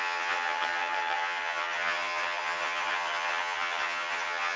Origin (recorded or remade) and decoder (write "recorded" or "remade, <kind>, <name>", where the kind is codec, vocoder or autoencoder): remade, vocoder, HiFi-GAN